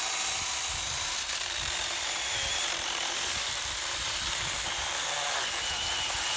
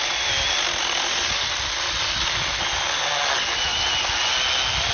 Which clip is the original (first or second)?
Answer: second